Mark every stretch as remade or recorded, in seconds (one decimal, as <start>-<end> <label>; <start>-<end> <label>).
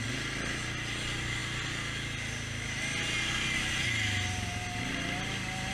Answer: 0.0-5.7 recorded